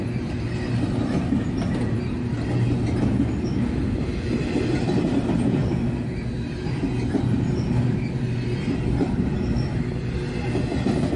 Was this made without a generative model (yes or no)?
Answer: yes